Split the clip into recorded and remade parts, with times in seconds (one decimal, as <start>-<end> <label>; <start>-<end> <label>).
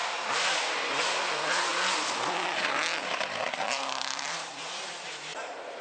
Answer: 0.0-0.9 remade; 0.9-3.6 recorded; 3.6-4.8 remade; 4.8-5.3 recorded; 5.3-5.8 remade